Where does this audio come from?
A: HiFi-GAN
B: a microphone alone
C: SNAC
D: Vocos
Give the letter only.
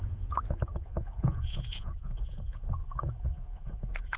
D